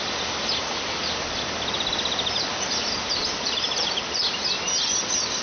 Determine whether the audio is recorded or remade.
recorded